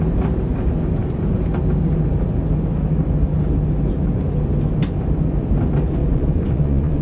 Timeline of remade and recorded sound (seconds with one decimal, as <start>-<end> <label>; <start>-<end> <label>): 0.0-6.0 recorded; 6.0-7.0 remade